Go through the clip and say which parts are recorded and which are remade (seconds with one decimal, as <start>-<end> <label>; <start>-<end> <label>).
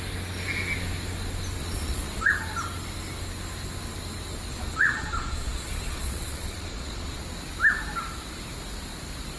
0.0-1.6 recorded; 1.6-2.3 remade; 2.3-4.5 recorded; 4.5-7.2 remade; 7.2-9.4 recorded